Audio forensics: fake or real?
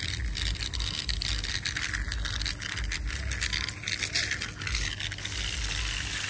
real